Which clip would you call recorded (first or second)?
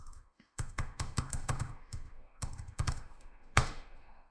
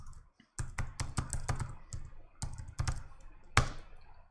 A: second